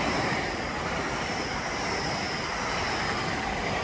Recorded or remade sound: recorded